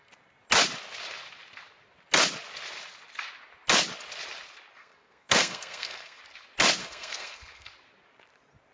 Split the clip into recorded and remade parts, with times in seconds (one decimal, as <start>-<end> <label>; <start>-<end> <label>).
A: 0.0-4.8 recorded; 4.8-6.2 remade; 6.2-6.8 recorded; 6.8-7.7 remade; 7.7-8.7 recorded